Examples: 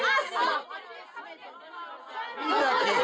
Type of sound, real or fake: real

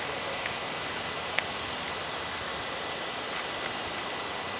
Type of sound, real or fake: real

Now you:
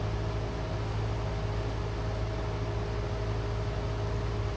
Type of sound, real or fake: real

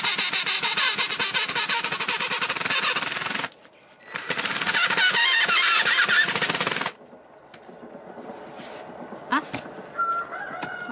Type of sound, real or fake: real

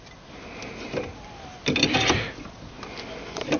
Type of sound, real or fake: real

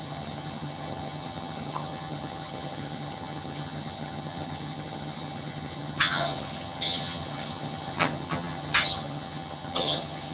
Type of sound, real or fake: fake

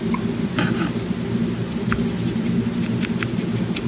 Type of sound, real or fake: real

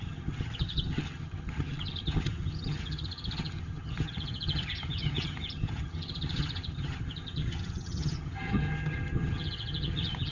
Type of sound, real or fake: fake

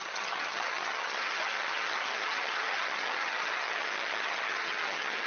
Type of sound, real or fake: fake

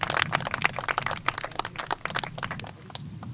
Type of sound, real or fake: real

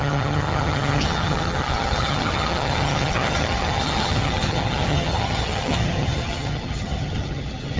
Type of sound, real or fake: fake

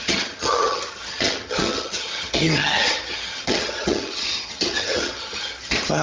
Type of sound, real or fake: fake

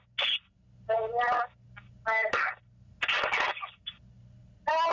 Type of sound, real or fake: real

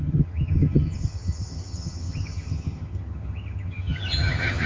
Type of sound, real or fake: fake